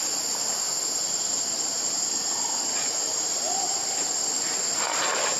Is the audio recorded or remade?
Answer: recorded